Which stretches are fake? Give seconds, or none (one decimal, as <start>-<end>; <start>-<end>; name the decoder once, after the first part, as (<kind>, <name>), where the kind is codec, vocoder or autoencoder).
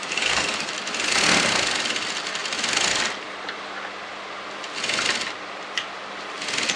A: 0.0-0.7 (codec, DAC)